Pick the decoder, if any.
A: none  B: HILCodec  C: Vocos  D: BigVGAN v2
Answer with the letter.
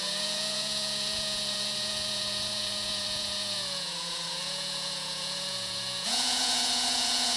C